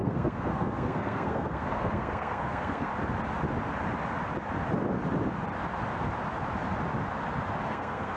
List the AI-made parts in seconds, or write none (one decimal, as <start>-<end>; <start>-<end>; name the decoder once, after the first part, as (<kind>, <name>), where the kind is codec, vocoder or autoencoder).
0.0-2.9 (codec, SNAC); 7.7-8.2